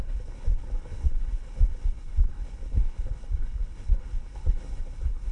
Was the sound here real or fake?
fake